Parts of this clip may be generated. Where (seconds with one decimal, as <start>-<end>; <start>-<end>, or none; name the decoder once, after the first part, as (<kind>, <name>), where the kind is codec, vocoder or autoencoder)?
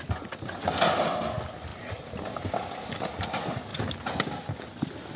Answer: none